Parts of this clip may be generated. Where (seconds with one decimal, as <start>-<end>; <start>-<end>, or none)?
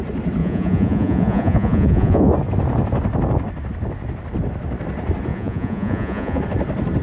0.4-2.3; 5.3-6.4